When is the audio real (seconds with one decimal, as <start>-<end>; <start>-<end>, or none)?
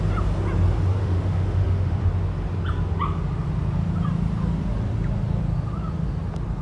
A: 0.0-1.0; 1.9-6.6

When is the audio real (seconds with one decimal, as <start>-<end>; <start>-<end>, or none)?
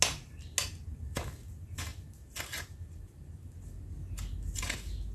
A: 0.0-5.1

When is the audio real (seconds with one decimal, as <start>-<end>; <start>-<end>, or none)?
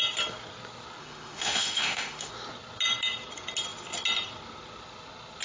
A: 0.0-1.0; 2.3-5.4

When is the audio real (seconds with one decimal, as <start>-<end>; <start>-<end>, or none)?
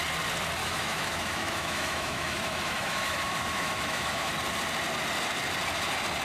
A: 0.0-0.6; 4.3-6.2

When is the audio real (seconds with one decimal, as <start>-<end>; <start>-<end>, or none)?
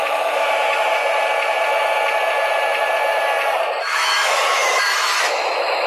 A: 1.0-3.8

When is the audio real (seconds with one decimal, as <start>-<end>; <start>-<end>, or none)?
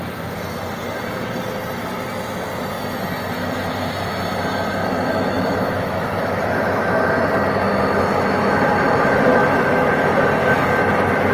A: 0.0-4.8; 7.0-9.3; 9.9-11.3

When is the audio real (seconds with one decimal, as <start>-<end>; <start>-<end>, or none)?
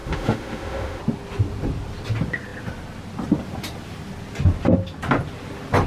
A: 1.0-5.9